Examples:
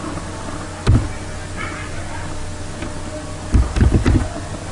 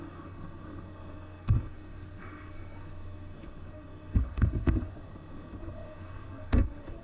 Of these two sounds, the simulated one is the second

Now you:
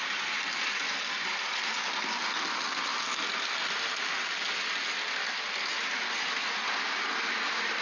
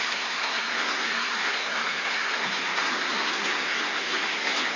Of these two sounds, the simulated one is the second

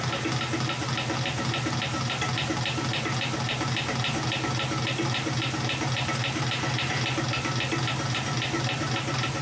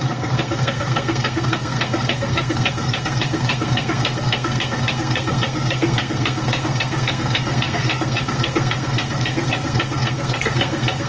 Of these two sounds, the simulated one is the second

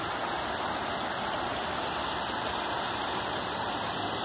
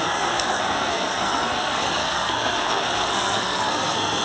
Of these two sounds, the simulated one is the second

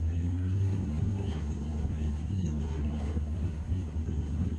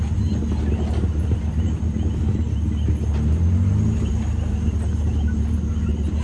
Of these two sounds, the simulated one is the first